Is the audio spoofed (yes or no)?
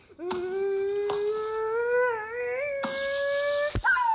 no